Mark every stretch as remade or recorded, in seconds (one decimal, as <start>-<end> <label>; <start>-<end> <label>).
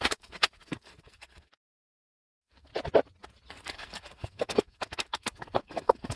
0.0-2.7 remade; 2.7-3.5 recorded; 3.5-6.2 remade